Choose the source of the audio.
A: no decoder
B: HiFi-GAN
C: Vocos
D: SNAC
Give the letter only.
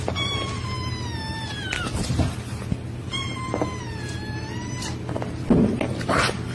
A